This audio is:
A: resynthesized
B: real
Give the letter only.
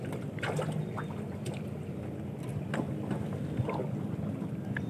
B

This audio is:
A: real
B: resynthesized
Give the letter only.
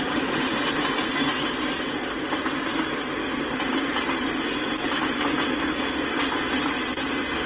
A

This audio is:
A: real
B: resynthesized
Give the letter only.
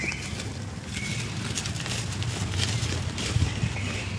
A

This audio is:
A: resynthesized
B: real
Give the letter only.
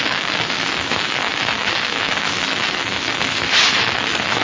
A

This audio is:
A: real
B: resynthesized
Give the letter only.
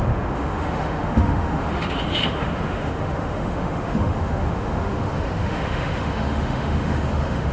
B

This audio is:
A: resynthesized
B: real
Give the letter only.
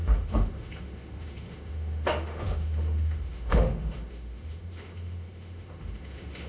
A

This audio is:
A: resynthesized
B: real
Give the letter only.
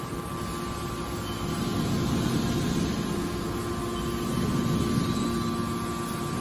B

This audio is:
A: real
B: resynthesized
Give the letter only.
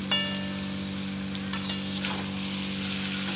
A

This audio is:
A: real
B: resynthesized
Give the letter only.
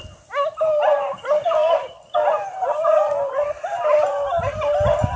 A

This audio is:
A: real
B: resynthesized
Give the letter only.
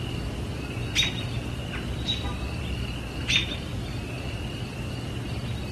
A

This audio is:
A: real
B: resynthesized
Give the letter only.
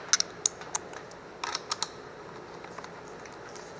A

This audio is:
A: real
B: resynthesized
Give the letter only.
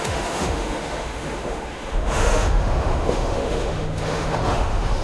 B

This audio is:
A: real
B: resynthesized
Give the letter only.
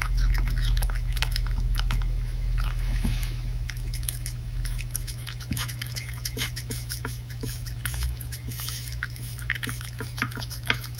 B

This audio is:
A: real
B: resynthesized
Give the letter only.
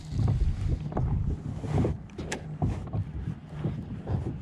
A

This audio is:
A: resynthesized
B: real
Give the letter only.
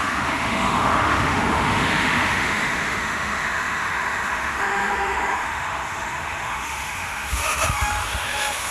A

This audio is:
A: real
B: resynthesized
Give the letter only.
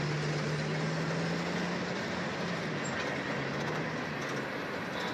A